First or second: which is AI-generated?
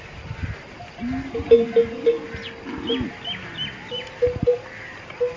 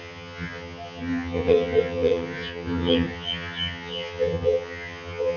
second